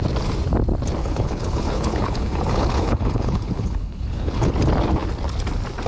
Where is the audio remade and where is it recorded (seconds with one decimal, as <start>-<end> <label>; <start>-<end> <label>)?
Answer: 0.0-1.0 recorded; 1.0-4.5 remade; 4.5-5.9 recorded